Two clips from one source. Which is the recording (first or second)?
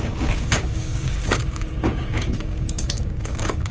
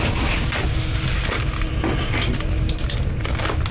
second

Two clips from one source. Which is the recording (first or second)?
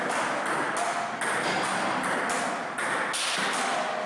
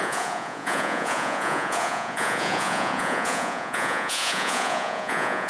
first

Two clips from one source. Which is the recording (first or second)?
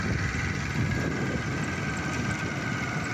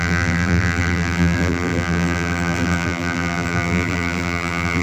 first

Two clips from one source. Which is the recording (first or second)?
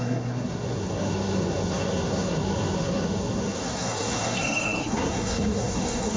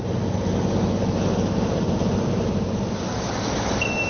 second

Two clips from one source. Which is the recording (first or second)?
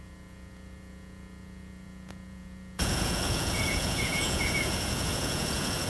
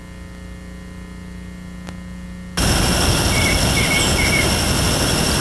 second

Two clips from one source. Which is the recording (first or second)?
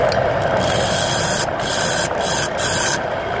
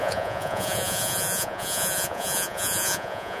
first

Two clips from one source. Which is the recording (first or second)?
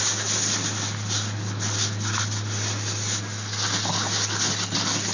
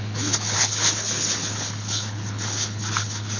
first